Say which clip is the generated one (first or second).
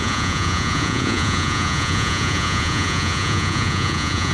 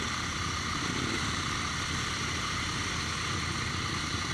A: first